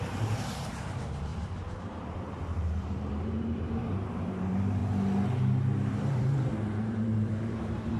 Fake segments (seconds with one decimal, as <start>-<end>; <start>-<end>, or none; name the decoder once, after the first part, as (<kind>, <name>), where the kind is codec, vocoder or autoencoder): 0.0-1.3 (vocoder, BigVGAN v2); 1.8-4.8; 5.9-8.0